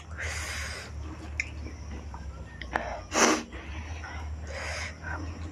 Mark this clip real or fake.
real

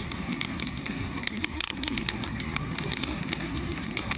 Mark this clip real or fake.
fake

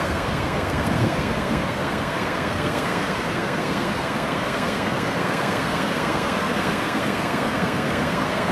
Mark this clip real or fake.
fake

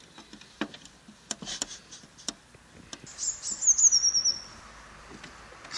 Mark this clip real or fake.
real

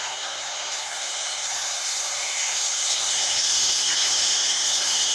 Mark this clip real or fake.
fake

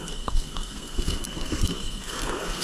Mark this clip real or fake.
fake